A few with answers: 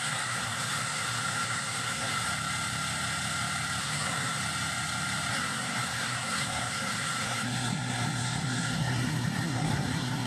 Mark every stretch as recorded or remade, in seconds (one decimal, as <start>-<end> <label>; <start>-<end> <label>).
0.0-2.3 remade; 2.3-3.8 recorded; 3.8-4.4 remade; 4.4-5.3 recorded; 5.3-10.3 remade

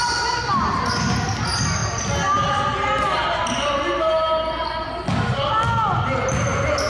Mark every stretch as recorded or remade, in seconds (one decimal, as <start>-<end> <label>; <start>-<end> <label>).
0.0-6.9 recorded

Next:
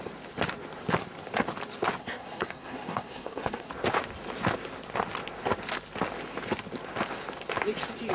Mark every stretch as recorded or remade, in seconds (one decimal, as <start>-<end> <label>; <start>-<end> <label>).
0.0-2.0 recorded; 2.0-3.7 remade; 3.7-8.1 recorded